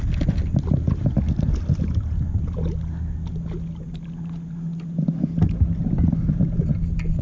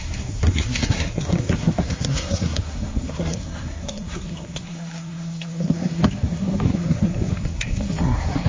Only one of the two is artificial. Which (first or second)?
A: second